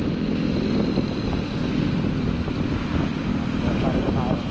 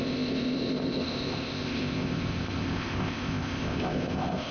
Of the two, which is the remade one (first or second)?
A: second